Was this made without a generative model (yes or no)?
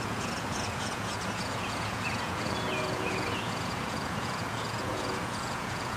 no